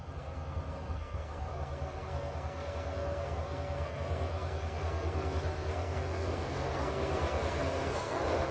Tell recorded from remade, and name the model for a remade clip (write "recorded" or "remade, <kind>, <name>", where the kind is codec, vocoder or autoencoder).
remade, codec, SNAC